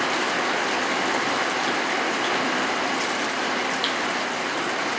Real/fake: real